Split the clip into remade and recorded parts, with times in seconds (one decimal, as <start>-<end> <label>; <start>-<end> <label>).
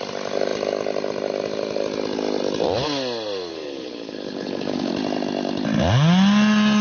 0.0-3.5 recorded; 3.5-4.9 remade; 4.9-6.8 recorded